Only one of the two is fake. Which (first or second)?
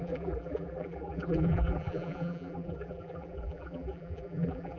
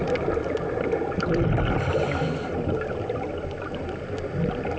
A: first